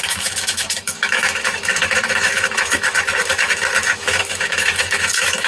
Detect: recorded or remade remade